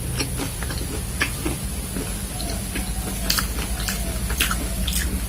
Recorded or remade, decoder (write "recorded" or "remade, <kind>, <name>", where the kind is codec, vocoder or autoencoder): recorded